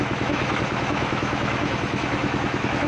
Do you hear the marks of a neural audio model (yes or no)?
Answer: yes